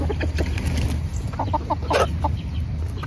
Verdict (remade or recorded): recorded